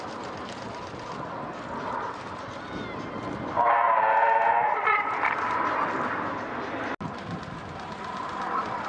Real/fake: real